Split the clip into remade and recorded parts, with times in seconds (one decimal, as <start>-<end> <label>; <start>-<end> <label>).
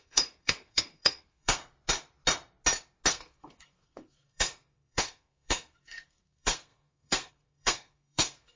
0.0-1.6 remade; 1.6-3.1 recorded; 3.1-8.6 remade